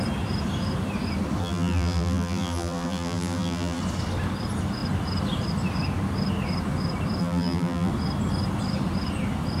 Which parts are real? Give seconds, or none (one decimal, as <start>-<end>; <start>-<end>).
0.0-1.4; 3.8-7.2; 7.9-9.6